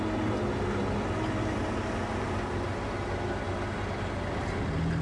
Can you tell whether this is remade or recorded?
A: recorded